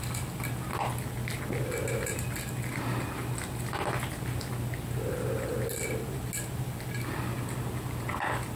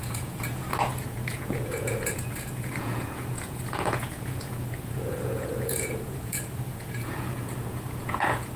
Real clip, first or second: first